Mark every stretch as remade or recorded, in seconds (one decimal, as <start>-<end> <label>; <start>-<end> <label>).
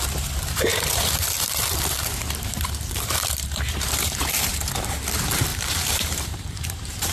0.0-0.7 recorded; 0.7-4.6 remade; 4.6-5.5 recorded; 5.5-7.1 remade